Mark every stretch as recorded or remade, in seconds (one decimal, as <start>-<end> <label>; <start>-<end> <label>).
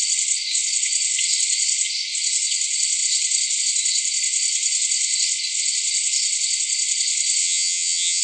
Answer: 0.0-7.4 recorded; 7.4-8.2 remade